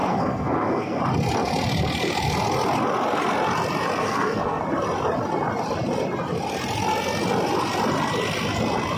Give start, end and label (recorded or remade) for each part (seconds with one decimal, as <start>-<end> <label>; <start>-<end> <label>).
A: 0.0-1.0 remade; 1.0-4.0 recorded; 4.0-4.6 remade; 4.6-9.0 recorded